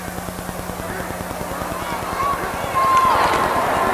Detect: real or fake real